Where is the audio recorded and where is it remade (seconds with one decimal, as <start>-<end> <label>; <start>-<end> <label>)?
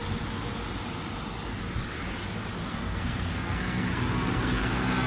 0.0-2.7 recorded; 2.7-5.1 remade